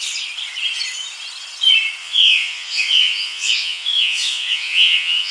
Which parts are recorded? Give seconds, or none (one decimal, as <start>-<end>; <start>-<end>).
0.0-2.0

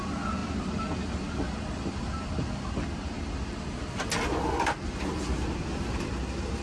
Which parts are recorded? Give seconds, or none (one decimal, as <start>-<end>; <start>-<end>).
0.0-6.6

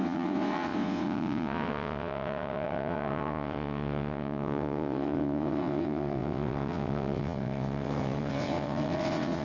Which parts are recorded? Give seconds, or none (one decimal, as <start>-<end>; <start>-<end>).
none

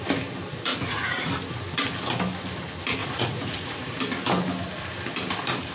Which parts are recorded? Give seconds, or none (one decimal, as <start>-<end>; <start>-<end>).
0.0-0.7; 1.3-3.0; 4.0-5.7

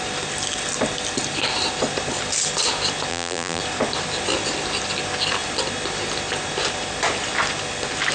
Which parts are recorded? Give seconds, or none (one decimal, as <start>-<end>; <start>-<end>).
0.0-3.1; 3.6-8.1

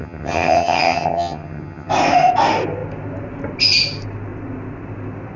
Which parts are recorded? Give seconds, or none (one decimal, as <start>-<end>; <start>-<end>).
1.9-5.4